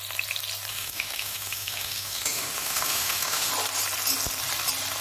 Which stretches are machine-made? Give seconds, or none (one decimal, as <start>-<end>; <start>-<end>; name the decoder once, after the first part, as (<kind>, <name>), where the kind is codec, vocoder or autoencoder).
0.7-3.5 (autoencoder, DAC-VAE)